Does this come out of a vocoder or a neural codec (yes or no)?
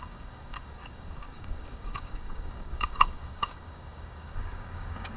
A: yes